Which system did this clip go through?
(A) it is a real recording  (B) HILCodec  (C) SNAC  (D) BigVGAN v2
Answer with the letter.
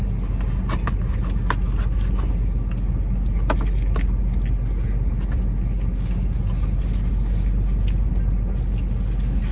A